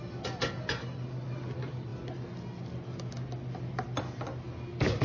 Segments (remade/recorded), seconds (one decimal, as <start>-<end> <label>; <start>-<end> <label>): 0.0-5.0 recorded